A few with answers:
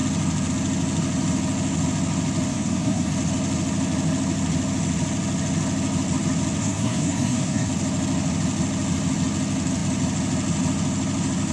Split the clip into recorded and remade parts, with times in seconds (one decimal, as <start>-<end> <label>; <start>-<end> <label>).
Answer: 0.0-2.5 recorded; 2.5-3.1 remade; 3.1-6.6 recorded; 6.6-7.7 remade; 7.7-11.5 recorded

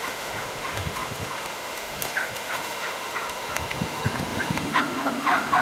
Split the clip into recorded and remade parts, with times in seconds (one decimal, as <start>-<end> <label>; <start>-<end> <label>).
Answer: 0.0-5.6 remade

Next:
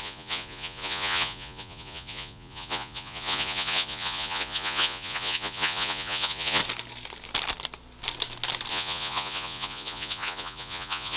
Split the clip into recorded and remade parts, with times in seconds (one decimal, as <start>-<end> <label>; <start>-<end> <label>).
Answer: 0.0-6.6 remade; 6.6-8.7 recorded; 8.7-11.2 remade

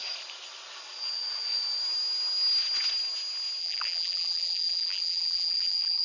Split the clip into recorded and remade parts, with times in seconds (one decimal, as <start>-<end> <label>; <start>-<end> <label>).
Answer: 0.0-3.6 recorded; 3.6-6.0 remade